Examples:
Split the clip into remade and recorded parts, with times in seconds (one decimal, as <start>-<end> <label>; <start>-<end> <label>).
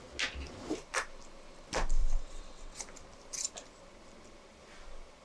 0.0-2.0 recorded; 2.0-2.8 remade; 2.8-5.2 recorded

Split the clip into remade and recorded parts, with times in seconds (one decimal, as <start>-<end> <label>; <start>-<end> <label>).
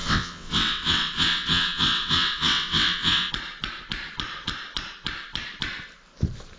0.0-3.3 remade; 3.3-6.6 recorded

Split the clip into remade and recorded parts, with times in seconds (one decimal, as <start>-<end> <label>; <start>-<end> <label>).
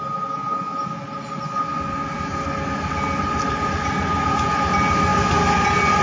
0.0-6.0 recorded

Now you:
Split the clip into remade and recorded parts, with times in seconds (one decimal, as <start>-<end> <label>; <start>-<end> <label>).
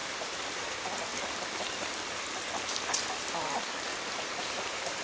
0.0-0.6 remade; 0.6-3.9 recorded; 3.9-5.0 remade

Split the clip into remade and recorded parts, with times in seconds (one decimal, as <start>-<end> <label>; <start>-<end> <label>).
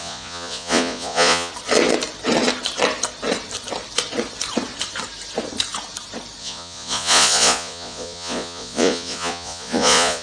0.0-1.5 remade; 1.5-6.4 recorded; 6.4-10.2 remade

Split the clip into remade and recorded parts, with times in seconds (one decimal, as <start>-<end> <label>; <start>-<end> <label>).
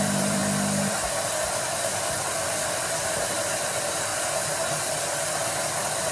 0.0-0.4 remade; 0.4-1.7 recorded; 1.7-4.1 remade; 4.1-5.4 recorded; 5.4-6.1 remade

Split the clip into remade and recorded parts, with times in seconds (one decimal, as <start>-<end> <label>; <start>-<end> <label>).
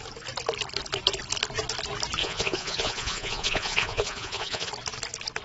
0.0-2.2 recorded; 2.2-4.7 remade; 4.7-5.4 recorded